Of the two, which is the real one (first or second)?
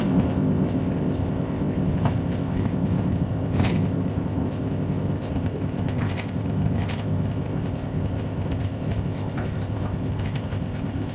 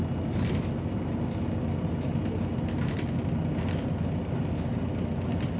second